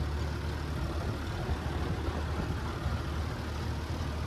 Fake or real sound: real